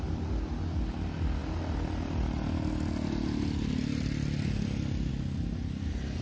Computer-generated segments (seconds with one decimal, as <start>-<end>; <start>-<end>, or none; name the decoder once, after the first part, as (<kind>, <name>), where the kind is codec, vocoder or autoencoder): none